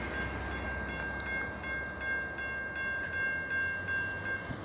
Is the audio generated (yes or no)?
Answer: no